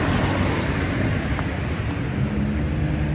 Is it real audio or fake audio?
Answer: real